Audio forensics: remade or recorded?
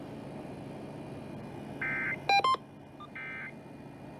recorded